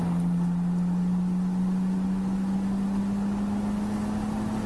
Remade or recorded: recorded